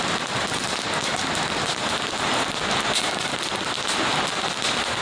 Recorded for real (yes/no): yes